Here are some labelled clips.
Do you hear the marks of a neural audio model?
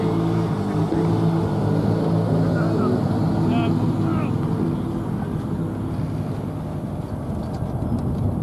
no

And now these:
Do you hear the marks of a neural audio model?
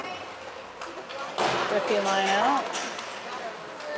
no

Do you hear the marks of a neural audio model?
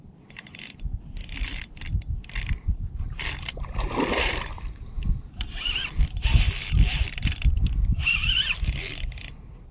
yes